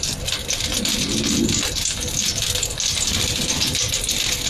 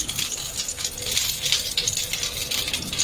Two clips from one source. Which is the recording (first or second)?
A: second